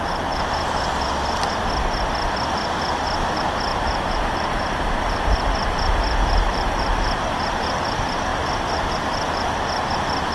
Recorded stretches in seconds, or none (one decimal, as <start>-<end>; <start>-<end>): 0.0-3.7; 7.2-8.3; 8.8-10.3